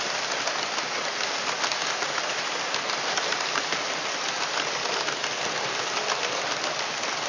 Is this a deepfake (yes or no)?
no